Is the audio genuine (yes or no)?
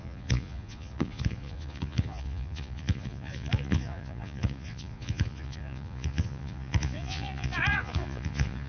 no